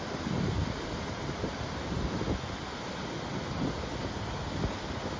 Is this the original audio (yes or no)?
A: yes